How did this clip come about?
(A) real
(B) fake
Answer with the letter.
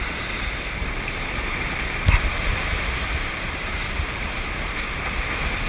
B